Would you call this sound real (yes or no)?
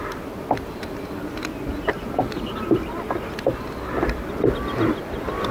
yes